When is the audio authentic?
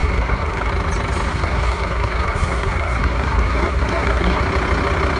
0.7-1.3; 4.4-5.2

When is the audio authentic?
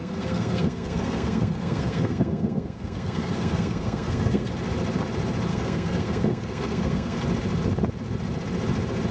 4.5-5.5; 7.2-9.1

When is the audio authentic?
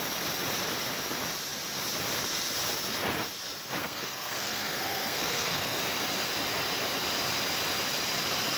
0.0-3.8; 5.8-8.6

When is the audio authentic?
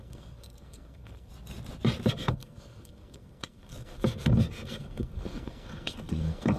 1.3-2.1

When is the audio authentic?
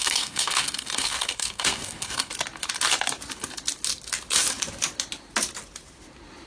2.3-6.5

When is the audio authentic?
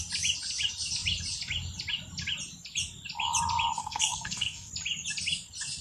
0.0-3.8; 4.7-5.8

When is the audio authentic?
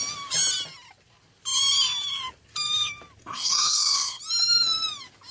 0.0-3.2; 4.2-5.3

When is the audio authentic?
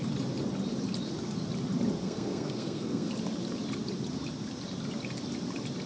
0.0-2.0; 3.1-5.9